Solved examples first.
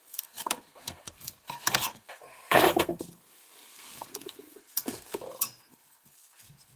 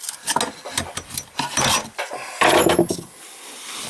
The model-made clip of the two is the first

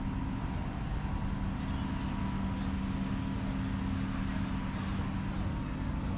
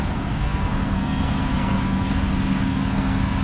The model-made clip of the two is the second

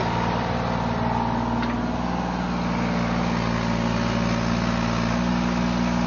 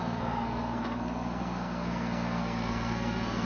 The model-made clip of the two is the second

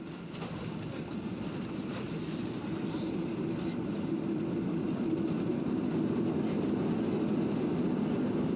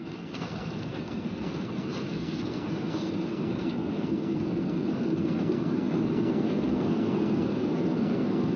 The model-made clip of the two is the second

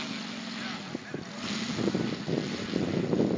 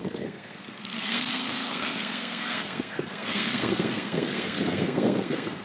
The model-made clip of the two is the second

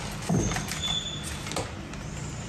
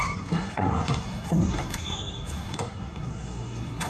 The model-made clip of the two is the second